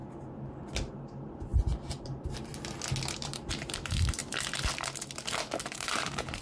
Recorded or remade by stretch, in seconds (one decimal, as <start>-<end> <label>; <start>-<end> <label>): 0.0-0.9 recorded; 0.9-1.5 remade; 1.5-2.0 recorded; 2.0-2.5 remade; 2.5-3.1 recorded; 3.1-4.2 remade; 4.2-5.6 recorded; 5.6-6.4 remade